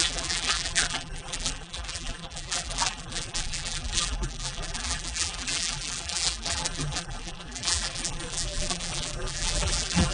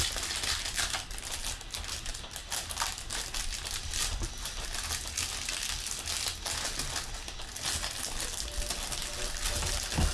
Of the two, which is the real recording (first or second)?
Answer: second